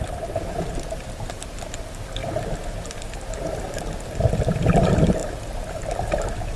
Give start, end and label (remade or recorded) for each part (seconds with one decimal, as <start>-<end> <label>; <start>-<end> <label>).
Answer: 0.0-6.6 recorded

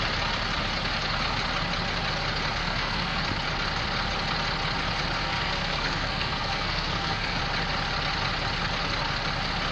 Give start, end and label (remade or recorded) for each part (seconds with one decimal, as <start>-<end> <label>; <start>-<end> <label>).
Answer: 0.0-2.6 recorded; 2.6-3.2 remade; 3.2-5.2 recorded; 5.2-7.4 remade; 7.4-9.7 recorded

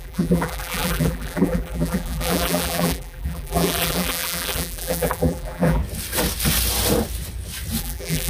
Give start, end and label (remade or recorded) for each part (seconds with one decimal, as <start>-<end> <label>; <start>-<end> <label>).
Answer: 0.0-5.8 remade; 5.8-7.8 recorded; 7.8-8.3 remade

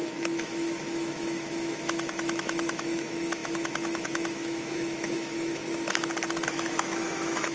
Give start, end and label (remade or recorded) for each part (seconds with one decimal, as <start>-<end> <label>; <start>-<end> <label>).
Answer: 0.0-5.6 remade; 5.6-6.5 recorded; 6.5-7.5 remade

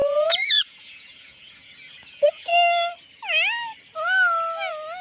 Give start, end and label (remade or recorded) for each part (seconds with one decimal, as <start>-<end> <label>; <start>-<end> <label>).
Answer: 0.0-2.5 remade; 2.5-5.0 recorded